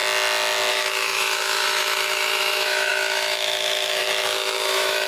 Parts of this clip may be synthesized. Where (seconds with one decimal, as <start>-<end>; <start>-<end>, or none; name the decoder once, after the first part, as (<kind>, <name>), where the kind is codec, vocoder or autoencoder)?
0.7-5.1 (autoencoder, DAC-VAE)